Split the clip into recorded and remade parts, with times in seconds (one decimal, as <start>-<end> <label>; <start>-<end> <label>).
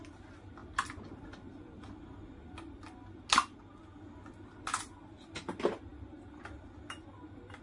0.0-7.6 recorded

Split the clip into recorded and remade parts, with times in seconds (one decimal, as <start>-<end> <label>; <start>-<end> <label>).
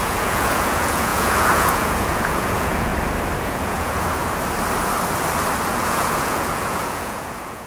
0.0-2.9 remade; 2.9-3.4 recorded; 3.4-4.2 remade; 4.2-5.7 recorded; 5.7-7.7 remade